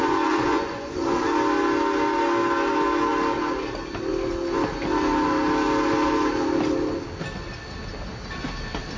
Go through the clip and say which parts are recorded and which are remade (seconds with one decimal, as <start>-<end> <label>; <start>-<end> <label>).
0.0-1.2 remade; 1.2-9.0 recorded